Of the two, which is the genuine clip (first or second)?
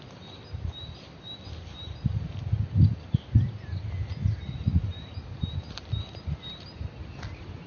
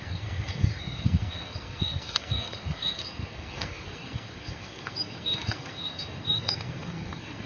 first